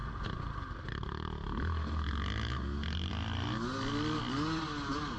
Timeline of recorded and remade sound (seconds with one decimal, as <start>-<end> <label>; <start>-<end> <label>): 0.0-5.2 recorded